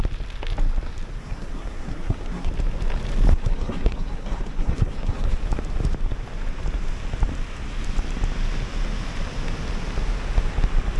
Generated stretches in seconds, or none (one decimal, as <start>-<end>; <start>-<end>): 1.2-2.5; 3.3-5.4